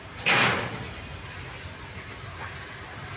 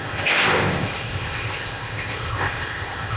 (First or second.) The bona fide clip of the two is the first